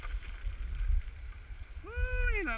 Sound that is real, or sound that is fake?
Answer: real